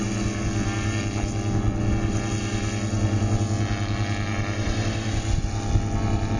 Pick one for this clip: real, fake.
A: real